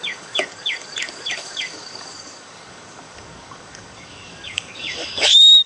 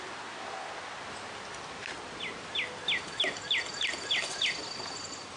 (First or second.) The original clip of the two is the second